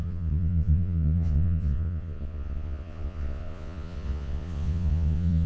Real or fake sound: fake